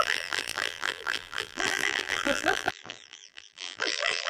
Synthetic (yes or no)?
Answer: yes